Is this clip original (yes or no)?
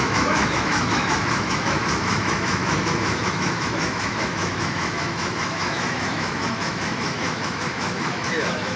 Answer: no